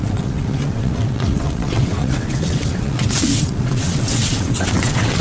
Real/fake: fake